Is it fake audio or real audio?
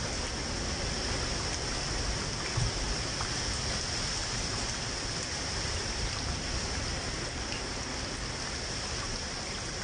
real